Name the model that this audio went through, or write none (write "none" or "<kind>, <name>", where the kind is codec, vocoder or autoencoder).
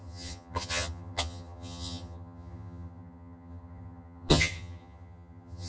vocoder, HiFi-GAN